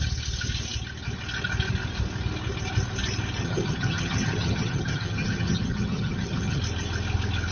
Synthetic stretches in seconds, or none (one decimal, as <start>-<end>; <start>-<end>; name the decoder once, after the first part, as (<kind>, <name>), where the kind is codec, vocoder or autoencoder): 3.4-6.6 (vocoder, HiFi-GAN)